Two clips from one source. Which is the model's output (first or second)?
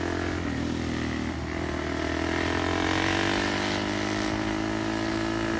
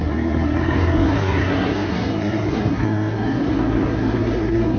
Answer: second